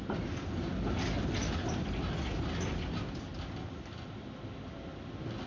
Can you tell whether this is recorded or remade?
recorded